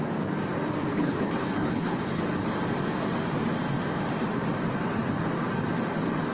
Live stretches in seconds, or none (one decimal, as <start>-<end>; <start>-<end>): 0.0-0.9; 2.2-6.3